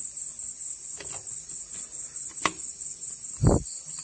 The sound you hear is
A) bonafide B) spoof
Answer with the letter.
A